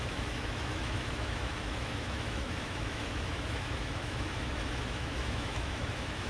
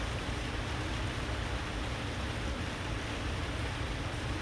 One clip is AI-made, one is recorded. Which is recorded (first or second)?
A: second